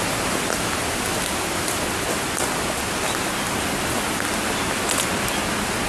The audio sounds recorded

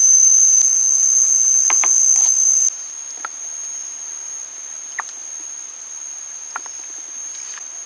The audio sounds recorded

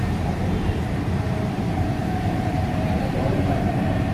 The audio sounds remade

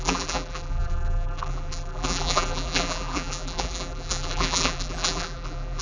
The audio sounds remade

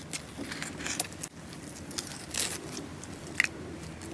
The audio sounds recorded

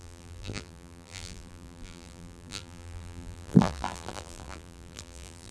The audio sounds remade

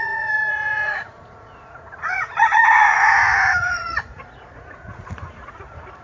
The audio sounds remade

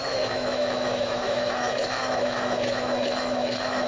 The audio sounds remade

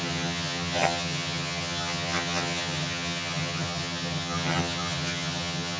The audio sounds remade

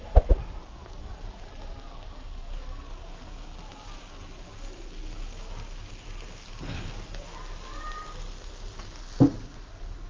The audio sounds recorded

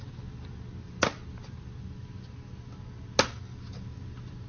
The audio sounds recorded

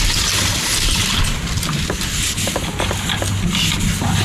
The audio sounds recorded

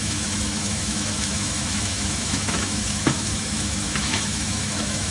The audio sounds remade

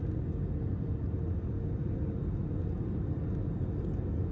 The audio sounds recorded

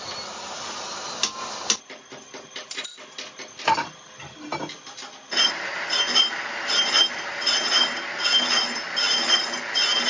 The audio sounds recorded